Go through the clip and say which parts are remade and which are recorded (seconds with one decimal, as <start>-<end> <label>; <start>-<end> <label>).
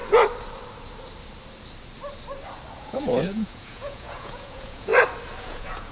0.0-2.7 recorded; 2.7-4.9 remade; 4.9-5.4 recorded; 5.4-5.9 remade